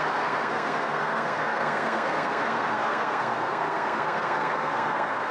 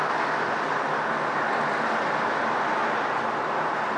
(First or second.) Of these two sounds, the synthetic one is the first